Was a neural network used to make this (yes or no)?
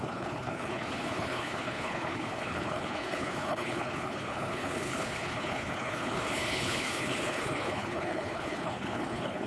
yes